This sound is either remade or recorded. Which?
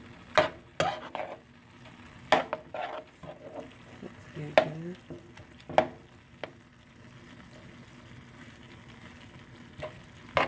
recorded